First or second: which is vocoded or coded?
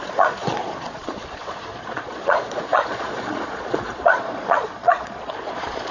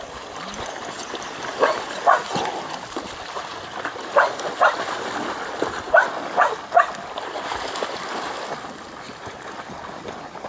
first